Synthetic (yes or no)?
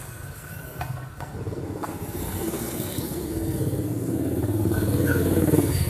yes